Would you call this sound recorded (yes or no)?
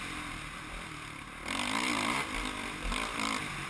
yes